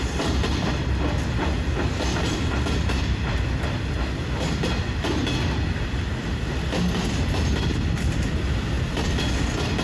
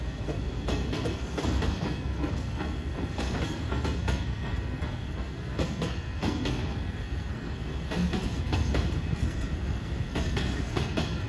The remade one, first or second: second